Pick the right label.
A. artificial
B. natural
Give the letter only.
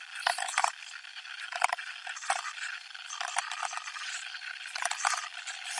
B